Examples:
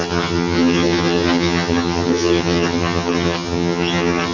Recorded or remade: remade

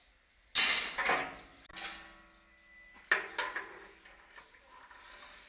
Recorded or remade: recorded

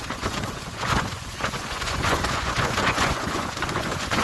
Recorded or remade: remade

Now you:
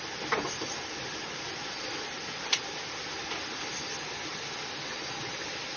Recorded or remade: recorded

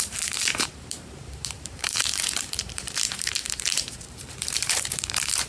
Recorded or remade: remade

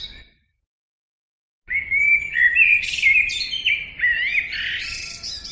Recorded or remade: recorded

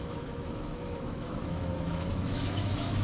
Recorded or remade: remade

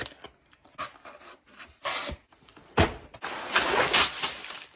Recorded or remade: recorded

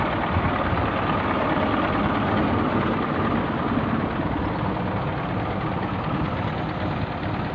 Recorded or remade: recorded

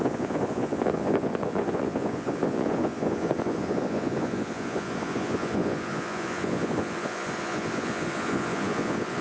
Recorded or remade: remade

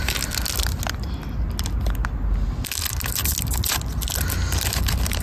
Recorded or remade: recorded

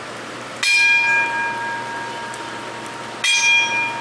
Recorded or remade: recorded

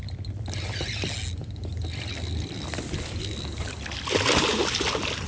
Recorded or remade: recorded